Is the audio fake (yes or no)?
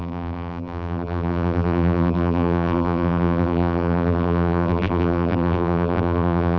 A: yes